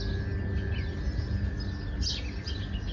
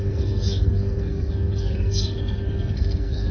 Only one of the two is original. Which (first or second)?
first